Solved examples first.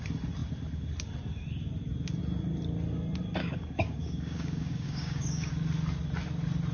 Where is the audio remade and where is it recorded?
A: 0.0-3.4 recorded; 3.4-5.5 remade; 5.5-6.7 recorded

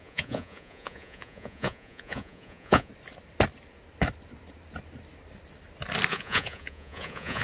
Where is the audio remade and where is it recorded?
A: 0.0-2.9 remade; 2.9-6.1 recorded; 6.1-7.4 remade